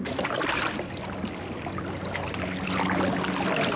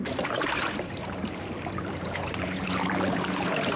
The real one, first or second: first